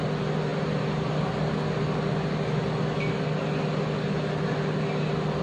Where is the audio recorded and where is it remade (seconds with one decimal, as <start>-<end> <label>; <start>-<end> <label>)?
0.0-5.4 recorded